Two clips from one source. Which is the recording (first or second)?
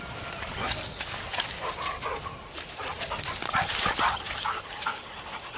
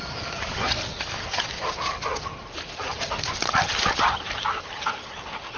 first